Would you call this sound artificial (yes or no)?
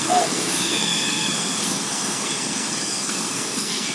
yes